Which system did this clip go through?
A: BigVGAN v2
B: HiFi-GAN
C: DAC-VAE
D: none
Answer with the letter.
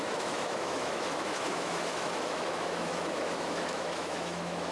C